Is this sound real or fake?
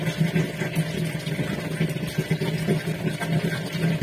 real